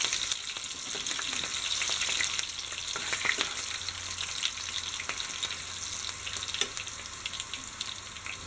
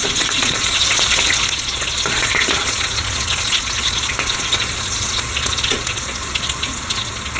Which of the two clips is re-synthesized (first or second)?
second